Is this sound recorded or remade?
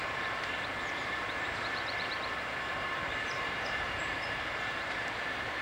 remade